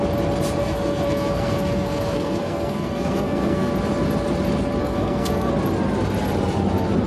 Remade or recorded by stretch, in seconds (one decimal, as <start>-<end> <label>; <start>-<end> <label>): 0.0-0.6 recorded; 0.6-3.7 remade; 3.7-4.8 recorded; 4.8-5.5 remade; 5.5-7.1 recorded